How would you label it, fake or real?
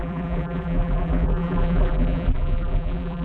fake